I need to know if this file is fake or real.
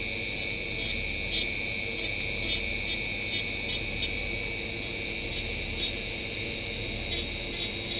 real